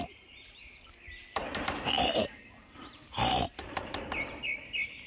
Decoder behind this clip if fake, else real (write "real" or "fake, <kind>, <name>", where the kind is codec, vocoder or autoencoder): fake, vocoder, BigVGAN v2